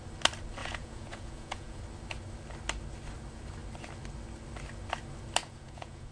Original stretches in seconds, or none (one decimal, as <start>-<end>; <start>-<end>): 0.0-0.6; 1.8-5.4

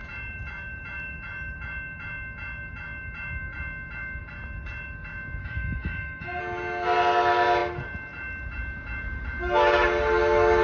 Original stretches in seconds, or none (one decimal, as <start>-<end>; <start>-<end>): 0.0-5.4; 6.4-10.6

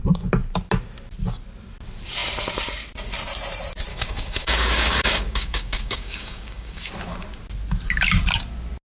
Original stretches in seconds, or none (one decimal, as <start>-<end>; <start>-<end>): 0.0-3.9; 6.9-8.9

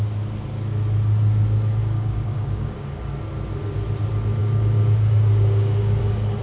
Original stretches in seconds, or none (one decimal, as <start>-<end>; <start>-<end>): 0.0-1.8; 3.0-4.4; 6.0-6.4

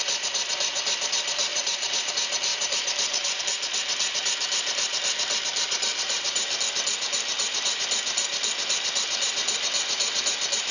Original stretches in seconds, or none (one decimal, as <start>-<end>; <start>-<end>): 0.0-1.5; 2.1-2.5; 3.4-5.9; 6.6-10.7